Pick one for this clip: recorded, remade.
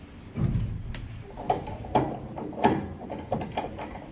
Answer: recorded